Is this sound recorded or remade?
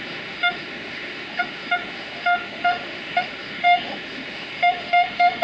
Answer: remade